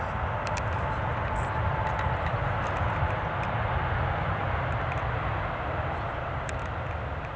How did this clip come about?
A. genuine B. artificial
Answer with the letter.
A